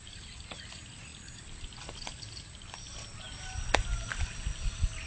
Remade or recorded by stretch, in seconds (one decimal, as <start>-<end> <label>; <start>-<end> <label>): 0.0-5.1 recorded